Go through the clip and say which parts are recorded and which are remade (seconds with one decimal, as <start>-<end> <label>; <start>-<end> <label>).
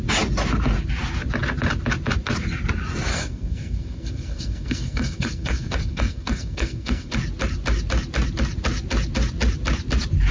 0.0-3.1 recorded; 3.1-7.1 remade; 7.1-10.3 recorded